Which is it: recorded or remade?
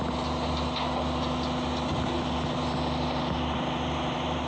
recorded